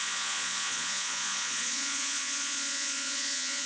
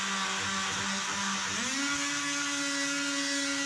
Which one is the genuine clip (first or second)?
second